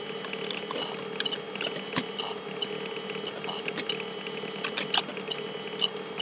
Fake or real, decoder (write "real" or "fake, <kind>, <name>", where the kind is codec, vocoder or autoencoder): real